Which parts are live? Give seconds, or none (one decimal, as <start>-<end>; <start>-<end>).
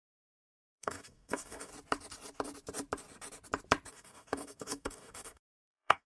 1.7-3.9